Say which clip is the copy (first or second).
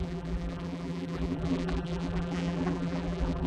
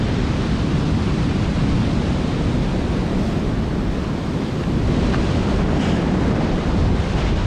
first